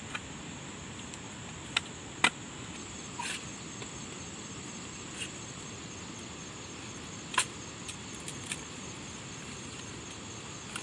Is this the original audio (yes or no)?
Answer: yes